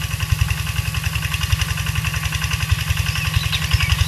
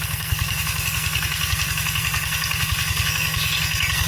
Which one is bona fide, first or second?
first